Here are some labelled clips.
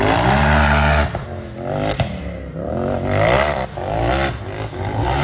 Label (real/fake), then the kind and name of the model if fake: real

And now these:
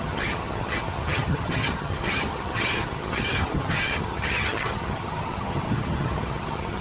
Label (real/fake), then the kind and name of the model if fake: fake, vocoder, HiFi-GAN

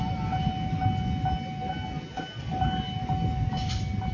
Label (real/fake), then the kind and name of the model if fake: real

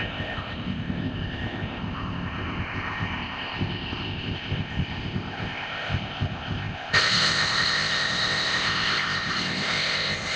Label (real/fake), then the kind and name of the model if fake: fake, codec, ZipCodec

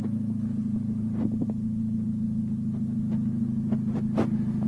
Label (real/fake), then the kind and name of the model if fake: real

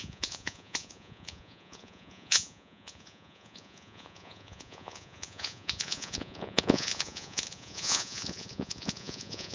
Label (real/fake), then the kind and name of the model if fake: fake, vocoder, Vocos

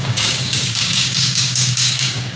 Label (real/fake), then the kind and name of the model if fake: fake, codec, DAC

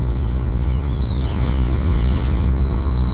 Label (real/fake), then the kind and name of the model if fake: fake, vocoder, Vocos